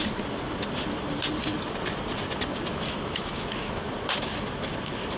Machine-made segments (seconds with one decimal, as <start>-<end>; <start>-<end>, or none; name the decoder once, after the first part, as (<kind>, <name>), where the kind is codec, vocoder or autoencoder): 2.7-3.8 (autoencoder, DAC-VAE)